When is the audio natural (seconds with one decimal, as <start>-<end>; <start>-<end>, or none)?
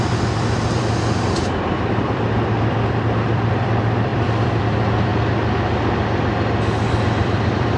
5.1-6.9